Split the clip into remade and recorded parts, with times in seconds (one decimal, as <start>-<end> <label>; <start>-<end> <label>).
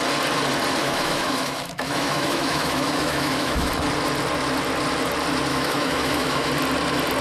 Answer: 0.0-0.8 recorded; 0.8-3.7 remade; 3.7-5.5 recorded; 5.5-6.5 remade; 6.5-7.2 recorded